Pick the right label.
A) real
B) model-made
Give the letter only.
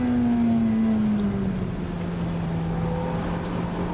A